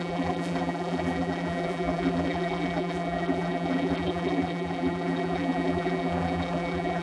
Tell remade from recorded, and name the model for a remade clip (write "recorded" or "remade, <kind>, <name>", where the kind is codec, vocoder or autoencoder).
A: remade, vocoder, BigVGAN v2